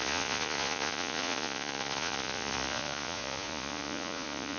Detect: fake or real fake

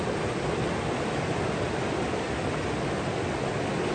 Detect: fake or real real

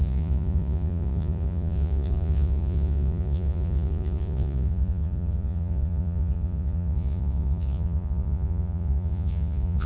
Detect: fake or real fake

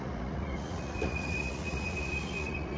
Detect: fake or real fake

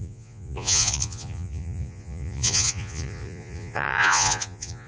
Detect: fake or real fake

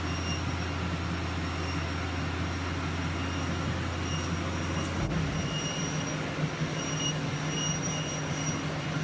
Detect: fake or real real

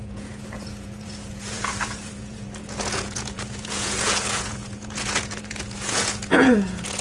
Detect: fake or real fake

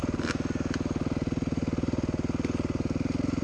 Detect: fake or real real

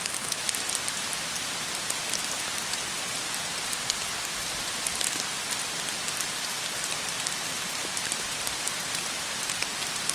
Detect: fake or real real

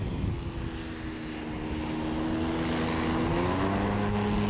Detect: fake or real real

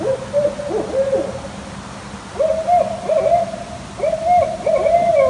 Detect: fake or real real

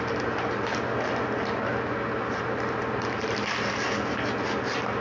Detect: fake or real real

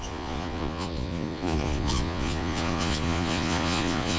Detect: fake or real fake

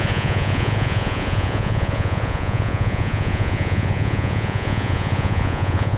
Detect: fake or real fake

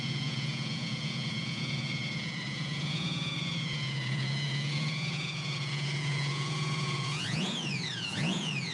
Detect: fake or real fake